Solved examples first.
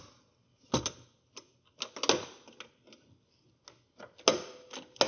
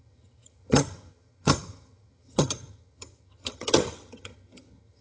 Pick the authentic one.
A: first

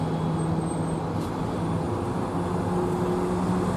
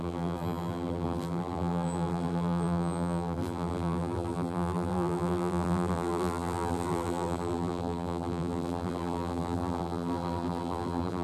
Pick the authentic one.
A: first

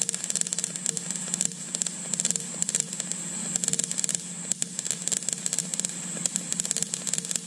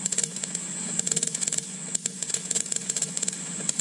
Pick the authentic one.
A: first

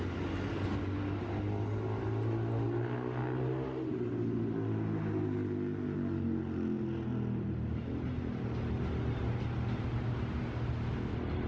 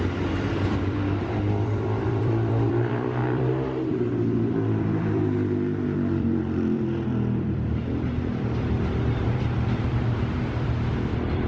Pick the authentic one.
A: first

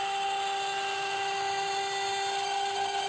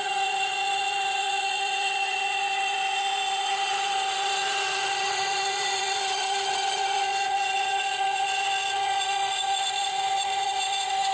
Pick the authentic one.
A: first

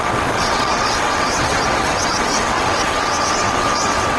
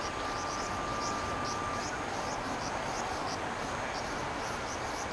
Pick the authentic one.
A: second